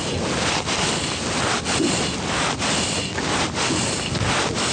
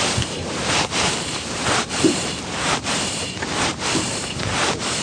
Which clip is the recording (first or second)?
first